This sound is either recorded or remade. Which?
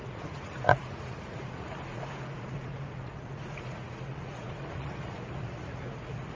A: remade